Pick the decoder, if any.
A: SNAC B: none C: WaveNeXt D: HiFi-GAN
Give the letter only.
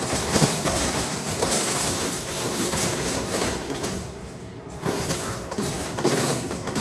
A